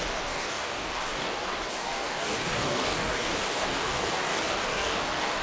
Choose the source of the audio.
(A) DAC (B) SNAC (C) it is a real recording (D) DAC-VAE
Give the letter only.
A